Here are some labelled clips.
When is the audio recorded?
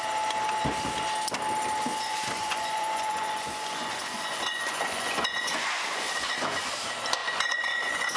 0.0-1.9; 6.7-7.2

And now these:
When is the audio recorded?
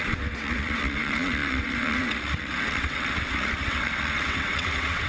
none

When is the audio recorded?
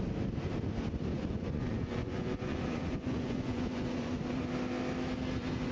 0.0-1.1; 4.2-5.7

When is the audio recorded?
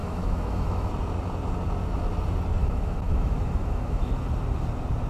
0.9-2.6; 4.1-5.1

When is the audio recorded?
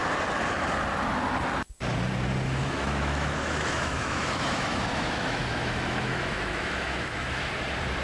0.0-2.6; 7.4-8.0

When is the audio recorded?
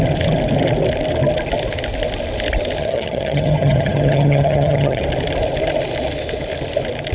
0.0-2.8; 5.0-7.1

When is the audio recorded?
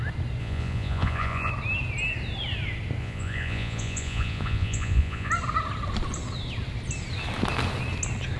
0.0-0.4; 1.5-3.0; 5.3-8.4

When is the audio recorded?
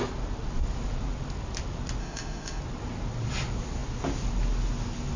0.0-2.0; 2.6-5.2